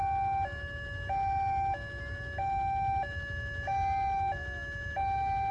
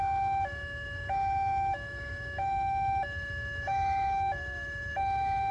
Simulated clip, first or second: second